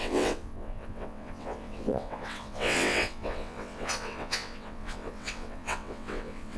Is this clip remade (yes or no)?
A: yes